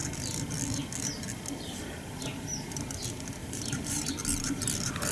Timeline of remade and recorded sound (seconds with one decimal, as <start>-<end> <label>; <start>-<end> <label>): 0.0-3.4 recorded; 3.4-4.1 remade; 4.1-5.1 recorded